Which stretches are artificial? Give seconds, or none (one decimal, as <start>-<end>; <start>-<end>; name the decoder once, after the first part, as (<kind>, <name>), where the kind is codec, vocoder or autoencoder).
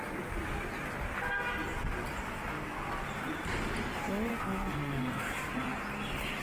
4.3-5.3 (codec, SNAC)